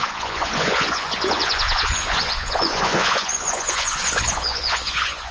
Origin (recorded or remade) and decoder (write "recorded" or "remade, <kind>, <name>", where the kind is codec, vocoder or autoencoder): remade, vocoder, Vocos